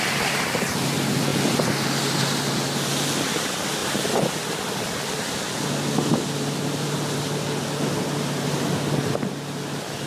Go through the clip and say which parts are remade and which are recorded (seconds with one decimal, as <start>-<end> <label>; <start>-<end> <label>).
0.0-10.1 recorded